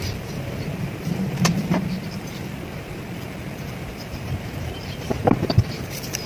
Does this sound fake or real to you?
fake